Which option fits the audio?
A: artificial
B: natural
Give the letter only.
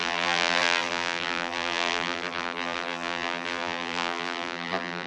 A